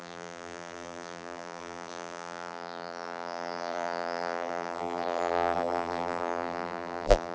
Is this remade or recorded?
remade